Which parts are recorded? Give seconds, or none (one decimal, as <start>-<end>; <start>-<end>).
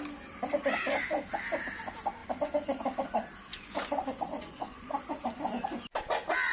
0.0-3.5; 4.9-6.5